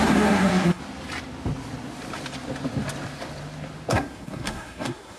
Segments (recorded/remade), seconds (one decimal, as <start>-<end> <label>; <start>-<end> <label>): 0.0-0.8 remade; 0.8-3.9 recorded; 3.9-5.2 remade